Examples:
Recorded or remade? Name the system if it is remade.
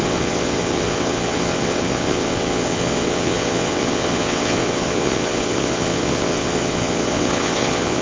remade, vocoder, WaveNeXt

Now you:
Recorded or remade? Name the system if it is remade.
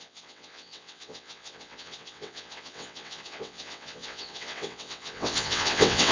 remade, vocoder, WaveNeXt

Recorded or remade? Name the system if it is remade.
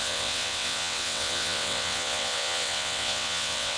remade, vocoder, WaveNeXt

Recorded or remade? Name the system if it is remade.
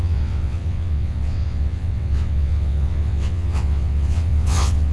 remade, vocoder, WaveNeXt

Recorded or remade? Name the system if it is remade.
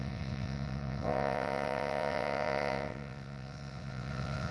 remade, vocoder, WaveNeXt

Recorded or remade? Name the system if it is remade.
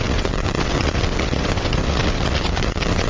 remade, vocoder, WaveNeXt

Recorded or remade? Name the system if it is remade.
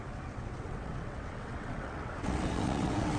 remade, vocoder, WaveNeXt